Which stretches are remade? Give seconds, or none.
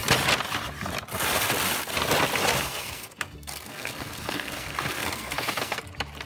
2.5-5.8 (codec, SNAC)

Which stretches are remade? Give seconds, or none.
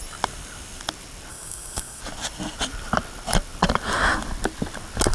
1.3-2.0 (codec, SNAC)